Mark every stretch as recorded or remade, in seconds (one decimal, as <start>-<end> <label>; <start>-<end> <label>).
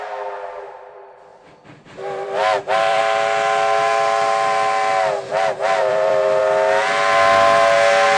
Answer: 0.0-1.3 recorded; 1.3-3.0 remade; 3.0-5.3 recorded; 5.3-6.4 remade; 6.4-8.2 recorded